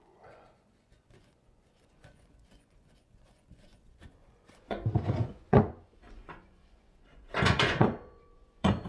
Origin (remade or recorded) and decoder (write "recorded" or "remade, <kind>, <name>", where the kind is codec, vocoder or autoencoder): remade, vocoder, Vocos